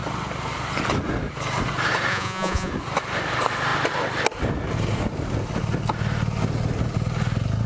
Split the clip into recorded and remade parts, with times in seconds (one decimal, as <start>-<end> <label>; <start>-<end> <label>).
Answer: 0.0-2.1 recorded; 2.1-2.7 remade; 2.7-7.7 recorded